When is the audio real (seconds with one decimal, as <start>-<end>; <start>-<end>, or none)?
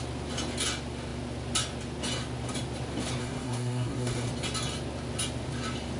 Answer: 0.0-3.2; 4.3-6.0